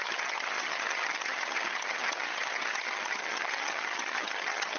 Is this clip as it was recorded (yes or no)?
no